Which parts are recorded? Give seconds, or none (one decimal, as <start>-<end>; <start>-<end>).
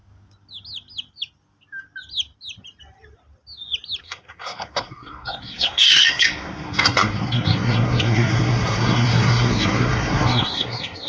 0.0-4.0